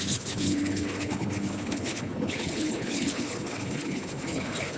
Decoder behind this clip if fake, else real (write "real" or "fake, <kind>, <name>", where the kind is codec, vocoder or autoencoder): fake, codec, HILCodec